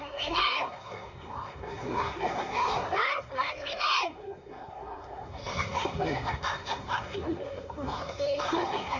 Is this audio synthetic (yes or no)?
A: yes